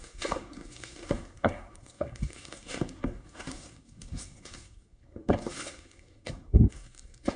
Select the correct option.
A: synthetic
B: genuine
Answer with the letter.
A